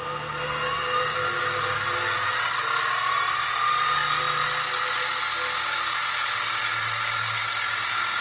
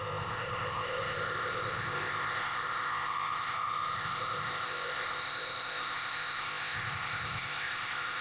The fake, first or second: second